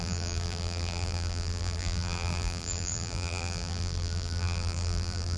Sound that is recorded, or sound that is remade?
remade